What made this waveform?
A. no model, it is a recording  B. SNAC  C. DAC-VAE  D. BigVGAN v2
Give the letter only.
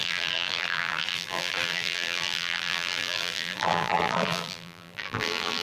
D